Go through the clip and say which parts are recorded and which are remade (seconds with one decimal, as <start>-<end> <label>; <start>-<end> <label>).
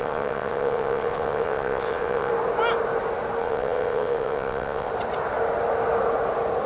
0.0-2.3 remade; 2.3-3.4 recorded; 3.4-4.9 remade; 4.9-6.7 recorded